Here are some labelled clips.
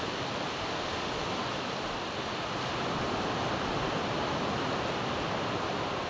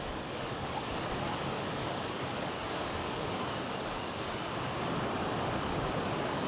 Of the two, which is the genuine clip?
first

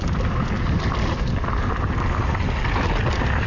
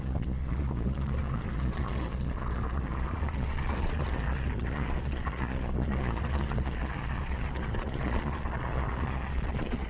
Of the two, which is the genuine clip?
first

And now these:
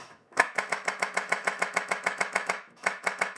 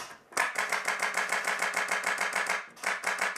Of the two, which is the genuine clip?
second